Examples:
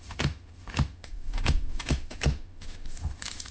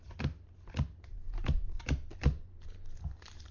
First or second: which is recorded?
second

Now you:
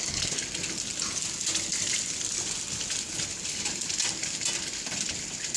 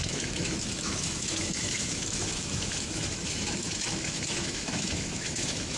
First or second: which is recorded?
first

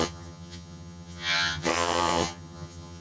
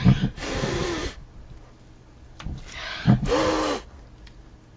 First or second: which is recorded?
second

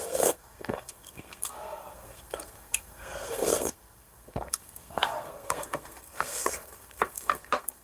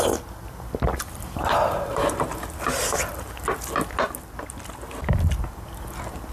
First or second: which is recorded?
second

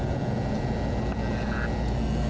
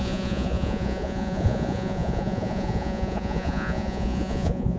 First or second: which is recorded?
first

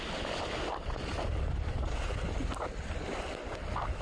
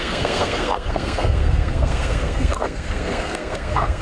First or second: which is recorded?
first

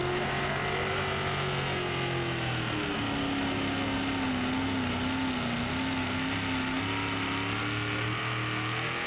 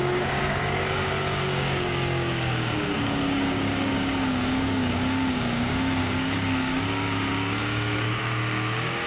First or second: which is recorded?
first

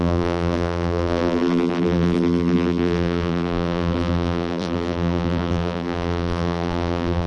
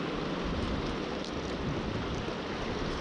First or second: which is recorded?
second